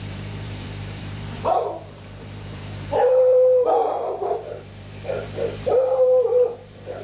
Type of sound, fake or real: fake